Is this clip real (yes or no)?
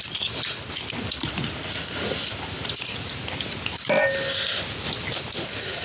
yes